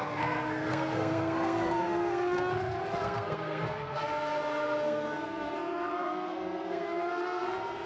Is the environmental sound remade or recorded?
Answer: remade